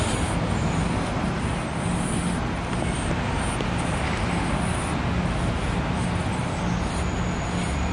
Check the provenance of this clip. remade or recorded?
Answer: recorded